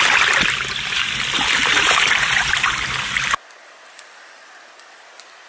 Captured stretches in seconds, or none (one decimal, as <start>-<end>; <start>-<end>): 0.0-1.6; 2.5-5.5